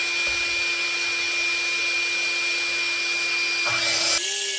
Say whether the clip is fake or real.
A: real